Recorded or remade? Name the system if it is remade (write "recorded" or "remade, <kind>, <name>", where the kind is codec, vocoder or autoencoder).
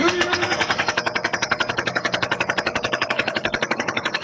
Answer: remade, codec, DAC